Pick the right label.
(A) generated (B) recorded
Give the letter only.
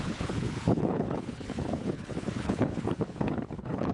A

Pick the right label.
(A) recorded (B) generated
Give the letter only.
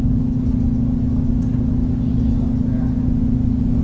A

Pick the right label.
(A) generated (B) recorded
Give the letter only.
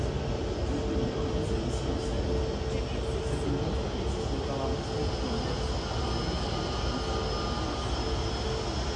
B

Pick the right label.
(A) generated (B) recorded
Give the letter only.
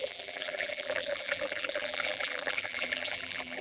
A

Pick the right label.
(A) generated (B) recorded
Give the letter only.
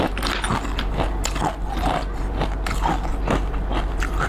B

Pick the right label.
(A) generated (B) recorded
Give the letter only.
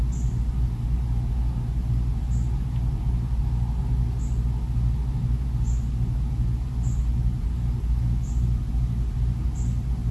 B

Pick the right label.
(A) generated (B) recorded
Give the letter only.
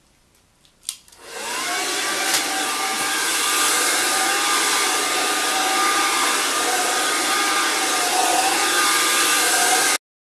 B